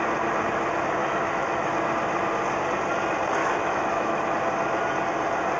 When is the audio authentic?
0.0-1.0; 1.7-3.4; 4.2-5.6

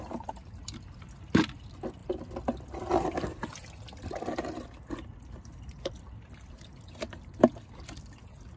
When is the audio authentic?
0.0-8.6

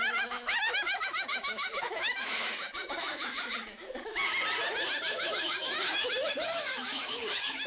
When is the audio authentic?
4.2-5.0

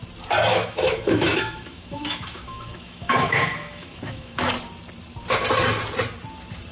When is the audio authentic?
0.0-0.5; 4.5-6.7